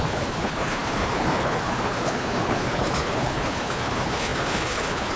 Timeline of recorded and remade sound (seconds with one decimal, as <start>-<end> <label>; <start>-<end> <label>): 0.0-5.2 remade